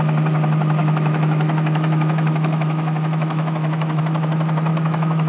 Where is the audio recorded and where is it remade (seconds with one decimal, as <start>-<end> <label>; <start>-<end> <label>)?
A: 0.0-0.8 recorded; 0.8-4.0 remade; 4.0-4.7 recorded; 4.7-5.3 remade